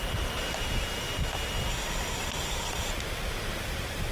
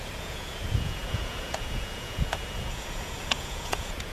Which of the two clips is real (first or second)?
first